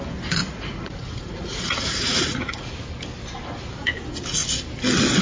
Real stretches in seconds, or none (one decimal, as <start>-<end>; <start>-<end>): 0.0-0.4; 2.7-5.2